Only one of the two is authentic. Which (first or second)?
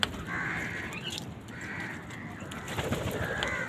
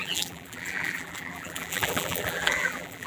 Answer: first